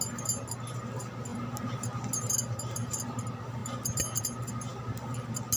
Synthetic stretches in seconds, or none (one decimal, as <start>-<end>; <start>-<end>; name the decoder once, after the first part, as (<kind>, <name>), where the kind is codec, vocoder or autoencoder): none

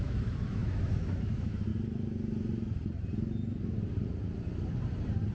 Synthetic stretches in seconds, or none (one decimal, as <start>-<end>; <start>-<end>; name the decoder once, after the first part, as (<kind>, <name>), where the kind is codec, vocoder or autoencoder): 0.0-1.7 (autoencoder, DAC-VAE)